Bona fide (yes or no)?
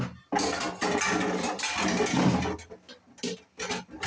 yes